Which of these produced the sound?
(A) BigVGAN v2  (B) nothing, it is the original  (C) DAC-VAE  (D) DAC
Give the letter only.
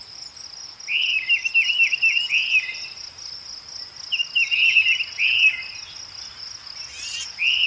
B